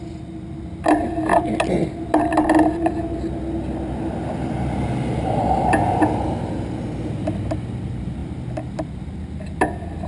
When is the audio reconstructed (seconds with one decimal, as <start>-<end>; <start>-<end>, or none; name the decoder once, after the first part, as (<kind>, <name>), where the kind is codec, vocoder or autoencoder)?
none